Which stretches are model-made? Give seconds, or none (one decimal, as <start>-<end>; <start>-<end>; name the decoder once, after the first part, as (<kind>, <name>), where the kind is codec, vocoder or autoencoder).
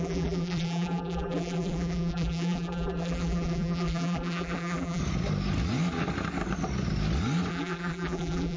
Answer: 0.0-5.0 (vocoder, BigVGAN v2); 7.5-8.6